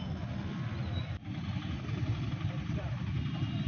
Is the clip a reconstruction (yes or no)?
no